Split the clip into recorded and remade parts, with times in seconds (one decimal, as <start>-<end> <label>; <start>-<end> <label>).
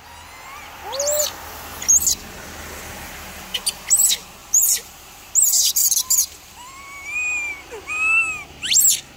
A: 0.0-4.4 recorded; 4.4-5.3 remade; 5.3-5.8 recorded; 5.8-7.9 remade; 7.9-9.2 recorded